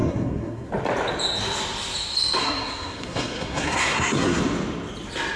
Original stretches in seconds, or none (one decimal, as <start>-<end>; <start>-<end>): 0.7-2.4; 4.4-5.4